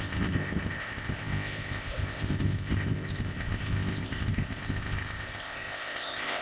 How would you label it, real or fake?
fake